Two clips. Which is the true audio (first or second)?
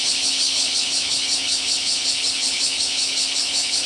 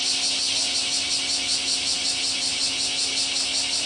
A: second